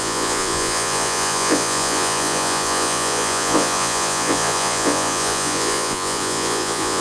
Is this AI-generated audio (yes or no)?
yes